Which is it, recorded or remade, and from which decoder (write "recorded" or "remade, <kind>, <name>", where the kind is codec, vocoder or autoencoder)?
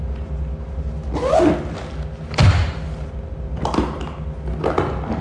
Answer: recorded